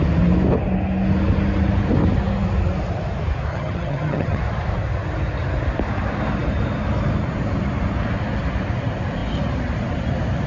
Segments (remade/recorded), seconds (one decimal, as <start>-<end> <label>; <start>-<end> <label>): 0.0-3.5 recorded; 3.5-4.4 remade; 4.4-10.5 recorded